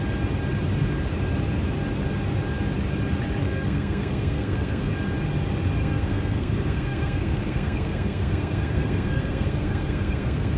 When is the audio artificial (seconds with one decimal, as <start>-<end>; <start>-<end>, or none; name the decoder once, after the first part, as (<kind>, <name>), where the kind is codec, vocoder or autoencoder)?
3.4-4.9 (codec, SNAC); 5.8-10.6